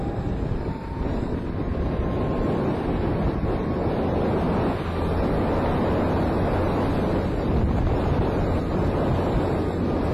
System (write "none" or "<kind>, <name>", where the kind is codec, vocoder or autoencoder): none